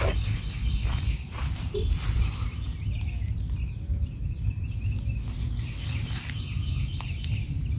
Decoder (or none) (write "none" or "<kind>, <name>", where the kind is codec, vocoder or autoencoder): none